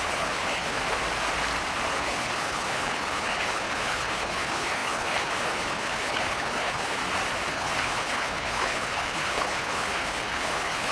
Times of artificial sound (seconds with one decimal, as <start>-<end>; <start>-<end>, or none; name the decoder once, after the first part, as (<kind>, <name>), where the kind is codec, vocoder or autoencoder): 0.0-0.8 (codec, HILCodec); 1.9-7.0; 7.5-10.9